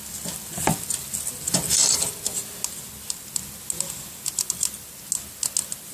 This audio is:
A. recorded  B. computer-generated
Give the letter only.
A